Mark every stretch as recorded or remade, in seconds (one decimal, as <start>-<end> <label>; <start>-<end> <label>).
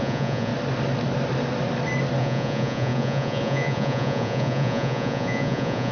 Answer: 0.0-0.5 remade; 0.5-2.2 recorded; 2.2-5.9 remade